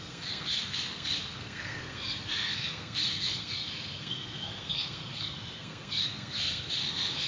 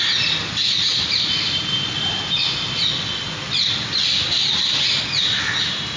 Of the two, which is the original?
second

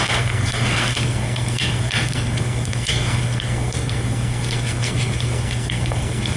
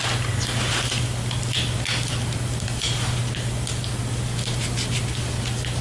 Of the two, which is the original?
second